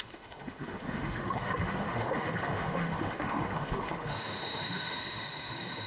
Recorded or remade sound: remade